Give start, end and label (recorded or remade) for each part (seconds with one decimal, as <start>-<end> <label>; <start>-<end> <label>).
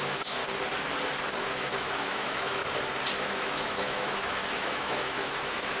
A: 0.0-0.4 remade; 0.4-1.4 recorded; 1.4-2.6 remade; 2.6-3.2 recorded; 3.2-5.8 remade